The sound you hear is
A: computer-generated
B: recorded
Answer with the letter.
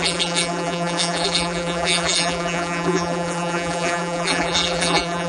A